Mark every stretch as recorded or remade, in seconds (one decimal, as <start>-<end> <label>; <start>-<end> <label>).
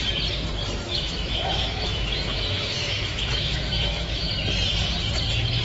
0.0-0.9 recorded; 0.9-4.3 remade; 4.3-5.6 recorded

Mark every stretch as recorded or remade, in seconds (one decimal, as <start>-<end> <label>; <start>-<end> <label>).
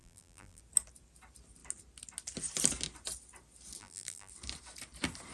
0.0-0.6 remade; 0.6-3.8 recorded; 3.8-4.3 remade; 4.3-5.3 recorded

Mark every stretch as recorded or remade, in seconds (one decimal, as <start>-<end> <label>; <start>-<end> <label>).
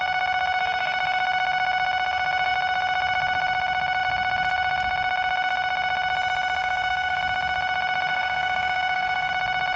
0.0-6.6 recorded; 6.6-7.2 remade; 7.2-8.1 recorded; 8.1-9.3 remade; 9.3-9.8 recorded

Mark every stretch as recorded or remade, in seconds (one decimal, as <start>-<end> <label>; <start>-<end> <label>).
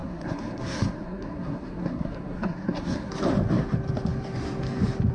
0.0-3.1 remade; 3.1-5.1 recorded